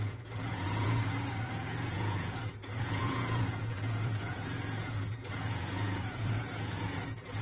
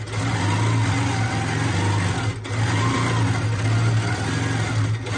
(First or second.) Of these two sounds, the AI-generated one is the first